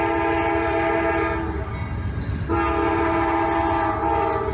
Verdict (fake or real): real